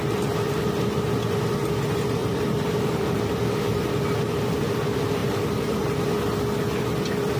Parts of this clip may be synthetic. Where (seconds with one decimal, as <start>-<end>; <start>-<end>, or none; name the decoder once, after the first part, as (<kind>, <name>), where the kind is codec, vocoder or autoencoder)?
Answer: 2.2-3.2 (vocoder, BigVGAN v2); 5.2-5.9

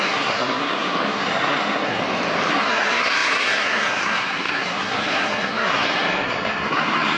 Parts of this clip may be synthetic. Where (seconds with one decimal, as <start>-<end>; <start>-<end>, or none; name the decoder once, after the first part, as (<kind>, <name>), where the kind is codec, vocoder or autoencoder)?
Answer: 0.0-2.0 (codec, SNAC); 2.5-7.2